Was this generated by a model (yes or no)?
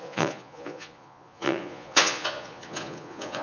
yes